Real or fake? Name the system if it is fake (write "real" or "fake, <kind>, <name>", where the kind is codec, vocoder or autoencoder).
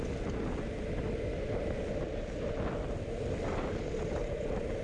real